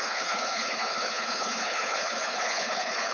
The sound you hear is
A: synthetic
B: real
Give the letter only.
A